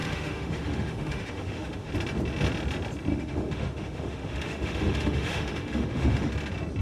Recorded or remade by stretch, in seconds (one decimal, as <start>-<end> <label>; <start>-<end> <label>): 0.0-1.9 remade; 1.9-3.1 recorded; 3.1-6.3 remade; 6.3-6.8 recorded

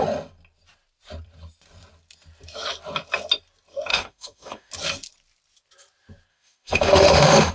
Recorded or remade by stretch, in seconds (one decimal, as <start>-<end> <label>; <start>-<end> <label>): 0.0-3.9 recorded; 3.9-4.7 remade; 4.7-6.3 recorded; 6.3-7.5 remade

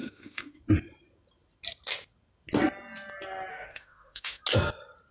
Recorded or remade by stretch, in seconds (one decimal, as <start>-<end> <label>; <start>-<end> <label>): 0.0-0.6 remade; 0.6-3.5 recorded; 3.5-4.4 remade; 4.4-5.1 recorded

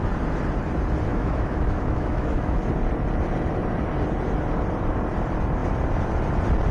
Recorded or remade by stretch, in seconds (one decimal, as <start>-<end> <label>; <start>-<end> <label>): 0.0-1.1 recorded; 1.1-2.6 remade; 2.6-6.7 recorded

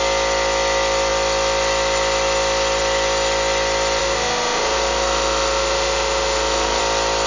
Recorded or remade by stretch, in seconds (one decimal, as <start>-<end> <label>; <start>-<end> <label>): 0.0-4.0 recorded; 4.0-6.8 remade; 6.8-7.3 recorded

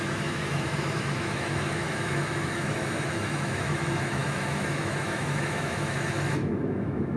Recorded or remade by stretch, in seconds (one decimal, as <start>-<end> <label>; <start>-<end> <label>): 0.0-7.2 remade

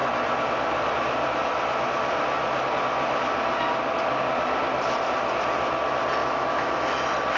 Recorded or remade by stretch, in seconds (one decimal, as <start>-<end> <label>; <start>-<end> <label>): 0.0-6.2 recorded; 6.2-7.0 remade; 7.0-7.4 recorded

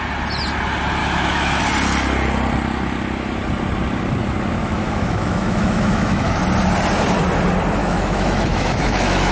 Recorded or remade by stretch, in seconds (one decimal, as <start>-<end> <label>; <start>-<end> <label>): 0.0-1.0 recorded; 1.0-1.6 remade; 1.6-4.6 recorded; 4.6-6.4 remade; 6.4-7.8 recorded; 7.8-9.3 remade